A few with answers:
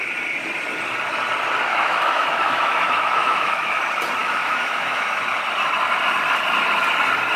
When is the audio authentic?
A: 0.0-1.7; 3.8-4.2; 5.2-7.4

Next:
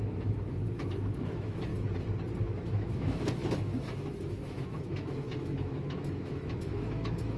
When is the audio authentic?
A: 1.7-2.4

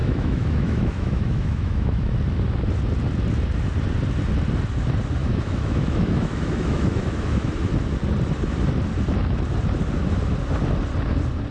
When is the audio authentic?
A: 2.1-5.2; 7.5-11.5

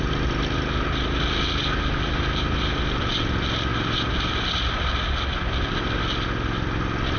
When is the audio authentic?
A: 0.0-7.2

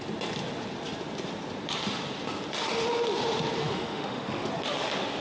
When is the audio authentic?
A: 0.0-3.6; 4.5-5.2

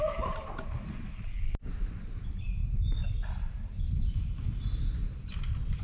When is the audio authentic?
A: 0.0-5.8

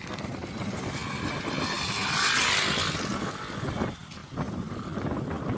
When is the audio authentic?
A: 0.0-5.6